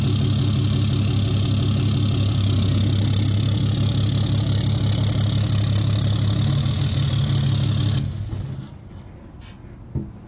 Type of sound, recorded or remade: recorded